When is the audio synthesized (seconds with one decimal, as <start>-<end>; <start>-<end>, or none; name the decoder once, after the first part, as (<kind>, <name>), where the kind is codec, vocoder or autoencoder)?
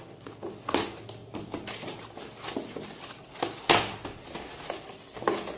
none